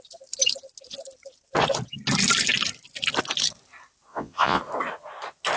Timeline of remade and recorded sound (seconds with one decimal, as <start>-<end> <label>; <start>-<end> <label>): 0.0-4.1 recorded; 4.1-4.6 remade; 4.6-5.6 recorded